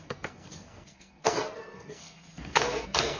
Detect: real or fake fake